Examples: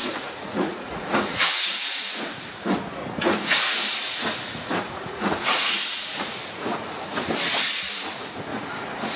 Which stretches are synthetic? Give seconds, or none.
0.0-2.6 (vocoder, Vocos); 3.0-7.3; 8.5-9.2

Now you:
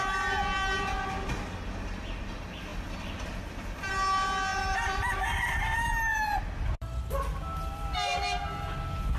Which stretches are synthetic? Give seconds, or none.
4.5-5.3 (vocoder, BigVGAN v2)

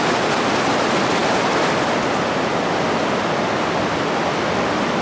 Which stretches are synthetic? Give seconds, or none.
none

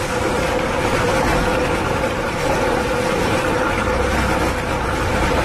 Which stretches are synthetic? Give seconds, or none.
0.0-5.4 (vocoder, BigVGAN v2)

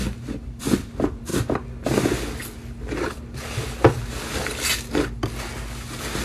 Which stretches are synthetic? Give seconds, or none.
none

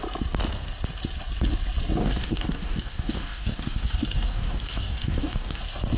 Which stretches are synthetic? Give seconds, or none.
2.0-5.6 (codec, DAC)

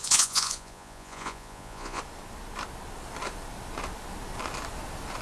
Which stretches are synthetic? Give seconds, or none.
0.0-2.0 (vocoder, Vocos)

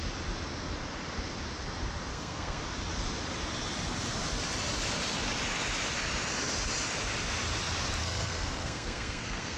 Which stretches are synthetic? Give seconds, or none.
2.1-2.6 (codec, SNAC); 8.0-9.6